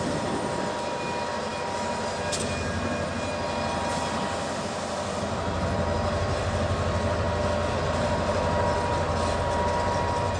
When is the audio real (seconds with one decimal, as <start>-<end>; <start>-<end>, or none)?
0.0-10.4